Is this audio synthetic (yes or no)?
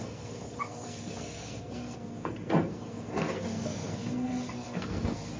yes